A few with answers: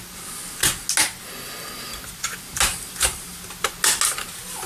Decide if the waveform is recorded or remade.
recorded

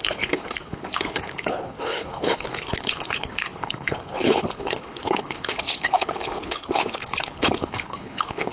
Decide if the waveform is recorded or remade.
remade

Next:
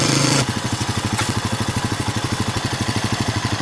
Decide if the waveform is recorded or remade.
remade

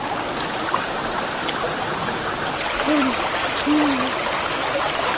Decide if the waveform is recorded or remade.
recorded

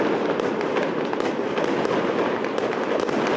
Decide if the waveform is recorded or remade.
recorded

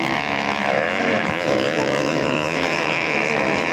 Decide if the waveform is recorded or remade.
remade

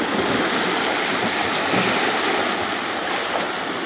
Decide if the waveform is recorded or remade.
recorded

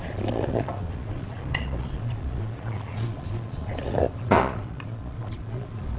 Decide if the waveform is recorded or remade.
remade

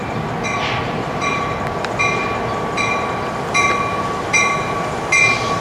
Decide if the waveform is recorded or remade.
recorded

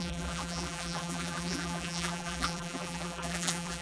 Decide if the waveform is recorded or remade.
remade